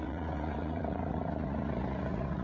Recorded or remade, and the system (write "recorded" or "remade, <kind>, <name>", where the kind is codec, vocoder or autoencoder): remade, vocoder, Vocos